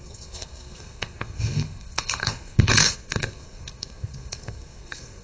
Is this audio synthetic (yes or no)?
yes